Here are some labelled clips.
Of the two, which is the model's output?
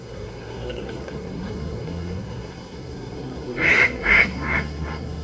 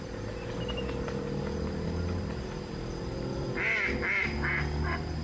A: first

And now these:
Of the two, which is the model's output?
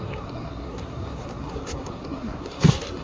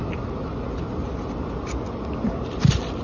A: first